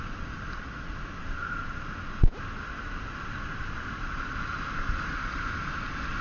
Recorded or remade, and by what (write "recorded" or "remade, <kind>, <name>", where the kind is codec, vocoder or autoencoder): recorded